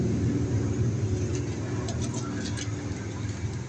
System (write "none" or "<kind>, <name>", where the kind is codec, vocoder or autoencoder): none